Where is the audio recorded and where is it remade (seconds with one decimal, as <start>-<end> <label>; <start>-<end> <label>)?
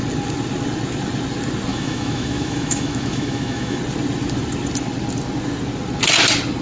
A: 0.0-1.7 recorded; 1.7-3.8 remade; 3.8-6.6 recorded